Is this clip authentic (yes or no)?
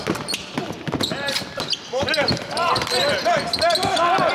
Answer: yes